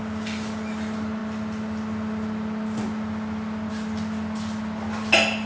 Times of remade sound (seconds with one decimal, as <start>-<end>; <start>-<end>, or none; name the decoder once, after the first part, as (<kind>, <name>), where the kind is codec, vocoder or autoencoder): none